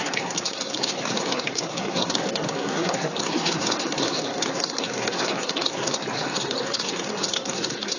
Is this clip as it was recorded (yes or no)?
no